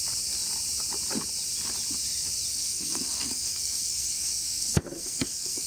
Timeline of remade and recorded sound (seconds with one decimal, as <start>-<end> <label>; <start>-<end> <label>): 0.0-2.5 recorded; 2.5-5.7 remade